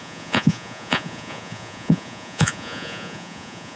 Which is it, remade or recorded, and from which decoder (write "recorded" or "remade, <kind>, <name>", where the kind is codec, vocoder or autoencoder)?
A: remade, vocoder, Vocos